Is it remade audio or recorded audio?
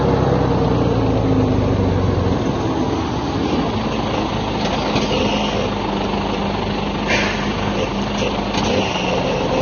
recorded